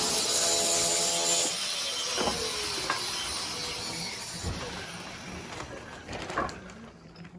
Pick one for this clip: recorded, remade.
recorded